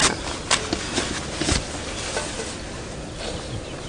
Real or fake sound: real